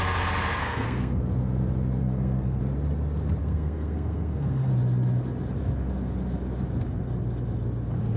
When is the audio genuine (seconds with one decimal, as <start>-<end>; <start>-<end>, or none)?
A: 0.0-0.6; 1.2-2.0; 2.6-3.4; 4.7-8.2